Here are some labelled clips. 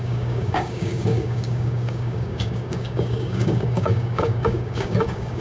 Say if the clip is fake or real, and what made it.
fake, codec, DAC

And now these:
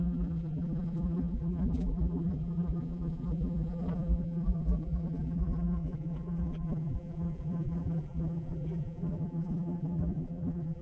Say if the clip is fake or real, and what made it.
fake, vocoder, BigVGAN v2